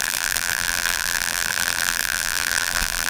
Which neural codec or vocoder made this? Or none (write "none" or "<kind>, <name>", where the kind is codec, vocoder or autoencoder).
vocoder, BigVGAN v2